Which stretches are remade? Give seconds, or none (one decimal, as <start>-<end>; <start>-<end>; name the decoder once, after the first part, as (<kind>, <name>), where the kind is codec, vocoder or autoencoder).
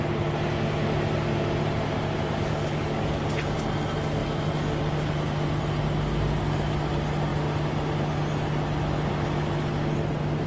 2.2-3.1 (codec, DAC)